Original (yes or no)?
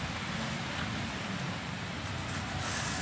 yes